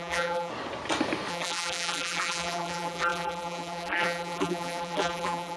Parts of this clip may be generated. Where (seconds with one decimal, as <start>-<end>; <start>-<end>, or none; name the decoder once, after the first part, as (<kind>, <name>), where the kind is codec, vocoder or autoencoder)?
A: 0.0-0.5 (vocoder, BigVGAN v2); 1.3-5.6